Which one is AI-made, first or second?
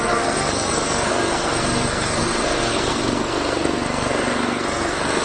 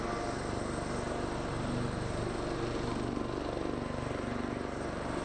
first